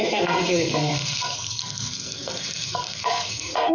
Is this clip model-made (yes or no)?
yes